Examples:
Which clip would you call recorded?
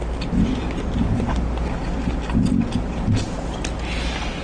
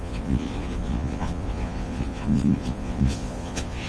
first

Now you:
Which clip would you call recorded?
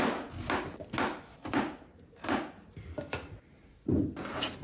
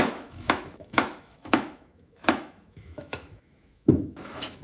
first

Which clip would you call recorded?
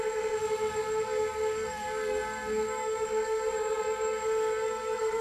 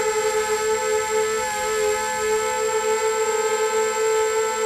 second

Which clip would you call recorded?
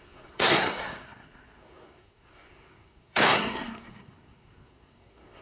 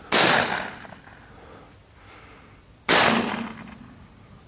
second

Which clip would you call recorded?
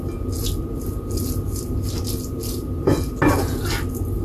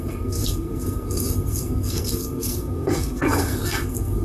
first